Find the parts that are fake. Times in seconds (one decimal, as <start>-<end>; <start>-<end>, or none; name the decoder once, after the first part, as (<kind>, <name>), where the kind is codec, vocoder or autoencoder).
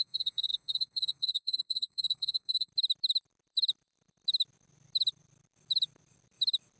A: 0.0-2.7 (codec, SNAC)